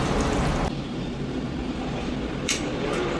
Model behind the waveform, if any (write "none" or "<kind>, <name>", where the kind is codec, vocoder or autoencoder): vocoder, BigVGAN v2